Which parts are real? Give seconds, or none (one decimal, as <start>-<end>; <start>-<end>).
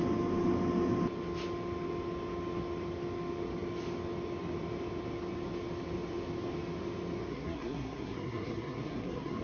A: 0.0-7.3